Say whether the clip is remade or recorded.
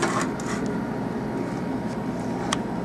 recorded